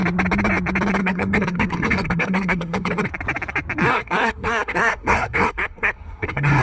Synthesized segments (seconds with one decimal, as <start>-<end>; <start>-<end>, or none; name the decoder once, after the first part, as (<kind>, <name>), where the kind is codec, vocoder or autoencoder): 1.0-3.1 (codec, SNAC); 3.9-6.6